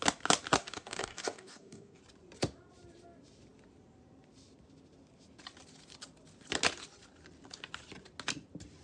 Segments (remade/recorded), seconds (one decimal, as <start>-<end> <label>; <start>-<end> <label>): 0.0-0.6 recorded; 0.6-2.0 remade; 2.0-8.8 recorded